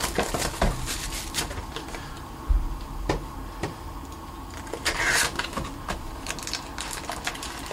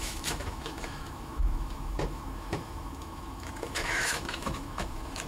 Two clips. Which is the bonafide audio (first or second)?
first